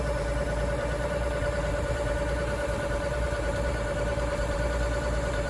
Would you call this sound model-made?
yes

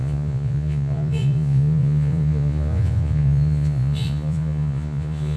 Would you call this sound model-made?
yes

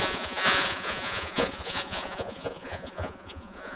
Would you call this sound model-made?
yes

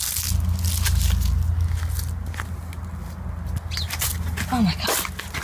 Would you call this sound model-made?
no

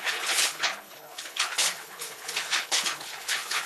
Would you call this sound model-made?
yes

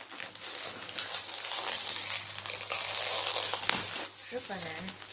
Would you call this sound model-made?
no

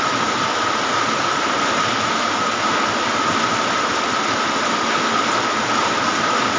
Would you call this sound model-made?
no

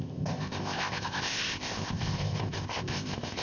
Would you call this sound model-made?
yes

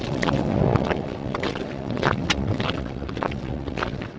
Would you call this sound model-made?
yes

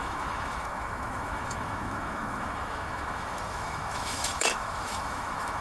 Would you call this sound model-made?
yes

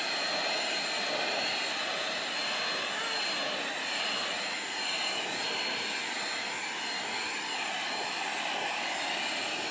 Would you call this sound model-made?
no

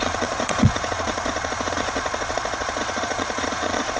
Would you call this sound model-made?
yes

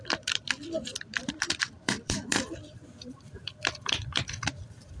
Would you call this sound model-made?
yes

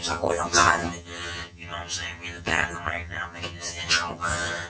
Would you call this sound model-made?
yes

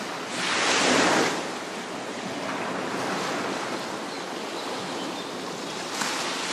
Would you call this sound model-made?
no